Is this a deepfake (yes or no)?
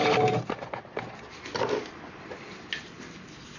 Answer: no